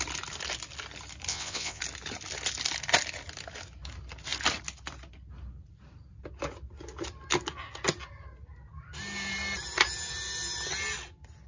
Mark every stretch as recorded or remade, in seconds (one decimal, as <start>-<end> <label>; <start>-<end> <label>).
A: 0.0-1.3 recorded; 1.3-1.8 remade; 1.8-11.5 recorded